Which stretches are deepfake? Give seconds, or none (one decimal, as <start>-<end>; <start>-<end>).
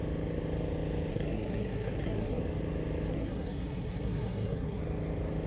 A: 1.1-2.4; 3.1-4.8